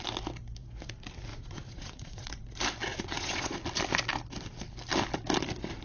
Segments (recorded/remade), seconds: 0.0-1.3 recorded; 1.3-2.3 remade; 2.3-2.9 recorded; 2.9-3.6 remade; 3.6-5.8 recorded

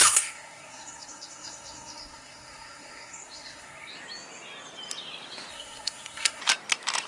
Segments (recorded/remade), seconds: 0.0-3.9 remade; 3.9-5.5 recorded; 5.5-6.4 remade; 6.4-7.1 recorded

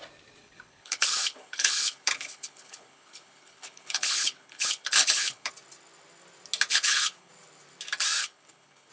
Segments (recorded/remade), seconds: 0.0-0.4 recorded; 0.4-5.5 remade; 5.5-6.7 recorded; 6.7-7.3 remade; 7.3-8.2 recorded; 8.2-8.9 remade

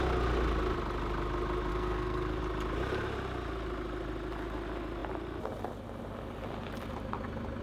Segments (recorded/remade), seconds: 0.0-1.7 recorded; 1.7-2.4 remade; 2.4-7.6 recorded

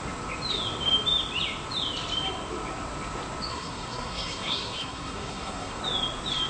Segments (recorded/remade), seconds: 0.0-3.5 recorded; 3.5-5.8 remade; 5.8-6.5 recorded

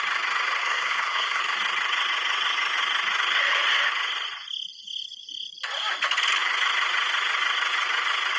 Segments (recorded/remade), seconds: 0.0-0.6 recorded; 0.6-1.4 remade; 1.4-8.4 recorded

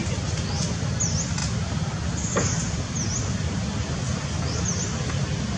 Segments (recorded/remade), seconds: 0.0-5.6 recorded

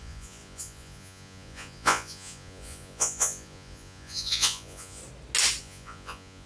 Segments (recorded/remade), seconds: 0.0-5.0 remade; 5.0-5.6 recorded; 5.6-6.5 remade